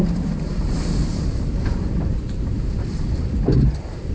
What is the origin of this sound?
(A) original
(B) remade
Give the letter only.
B